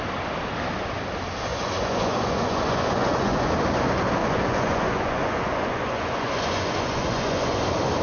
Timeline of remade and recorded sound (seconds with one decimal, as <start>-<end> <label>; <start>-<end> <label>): 0.0-1.5 recorded; 1.5-3.5 remade; 3.5-4.2 recorded; 4.2-7.6 remade; 7.6-8.0 recorded